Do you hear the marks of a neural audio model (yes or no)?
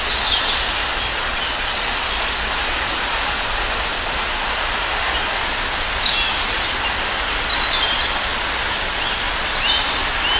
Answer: no